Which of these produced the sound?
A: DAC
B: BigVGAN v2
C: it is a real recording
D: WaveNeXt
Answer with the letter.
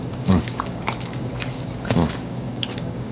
A